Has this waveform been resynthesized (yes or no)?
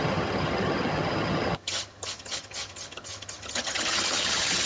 yes